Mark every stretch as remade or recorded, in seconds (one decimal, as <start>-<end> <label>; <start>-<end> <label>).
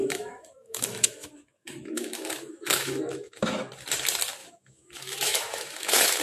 0.0-3.7 remade; 3.7-4.4 recorded; 4.4-6.2 remade